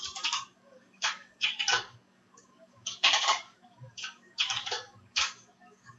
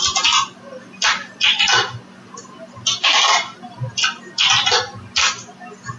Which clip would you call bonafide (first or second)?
second